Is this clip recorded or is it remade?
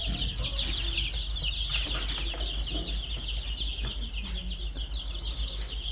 recorded